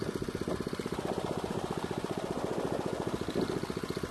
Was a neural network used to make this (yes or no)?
no